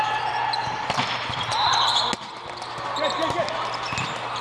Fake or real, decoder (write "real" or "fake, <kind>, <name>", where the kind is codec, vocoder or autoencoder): real